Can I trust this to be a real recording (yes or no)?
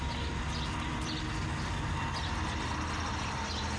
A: yes